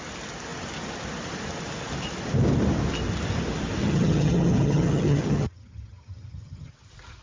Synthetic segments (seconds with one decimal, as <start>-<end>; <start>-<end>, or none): 3.8-6.7